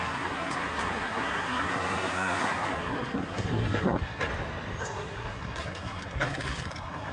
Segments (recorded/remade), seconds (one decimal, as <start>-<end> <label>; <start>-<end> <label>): 0.0-4.3 remade; 4.3-4.8 recorded; 4.8-7.1 remade